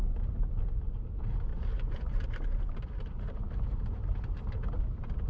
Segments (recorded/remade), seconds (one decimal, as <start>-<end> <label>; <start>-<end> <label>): 0.0-1.5 recorded; 1.5-4.7 remade; 4.7-5.3 recorded